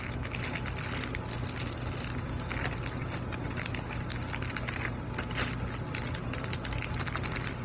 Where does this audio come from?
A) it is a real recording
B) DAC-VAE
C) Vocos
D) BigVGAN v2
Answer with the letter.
A